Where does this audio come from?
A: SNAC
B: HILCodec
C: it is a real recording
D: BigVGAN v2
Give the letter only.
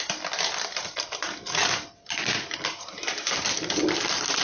D